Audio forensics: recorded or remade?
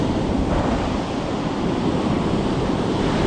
remade